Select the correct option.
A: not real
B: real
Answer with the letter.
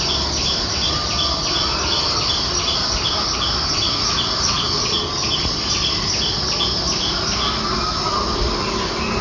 B